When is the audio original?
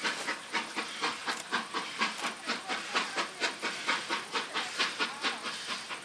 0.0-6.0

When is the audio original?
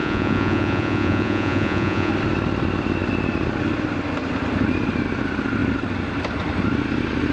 2.1-7.3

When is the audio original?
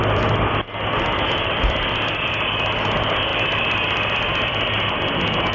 0.0-5.5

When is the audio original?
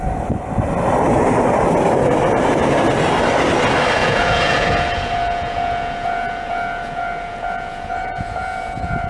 0.0-4.0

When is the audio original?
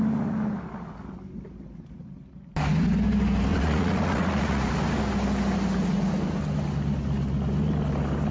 0.0-3.5; 4.7-8.3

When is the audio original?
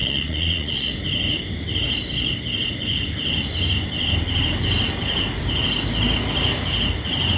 0.9-7.4